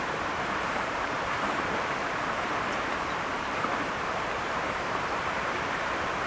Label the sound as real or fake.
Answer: fake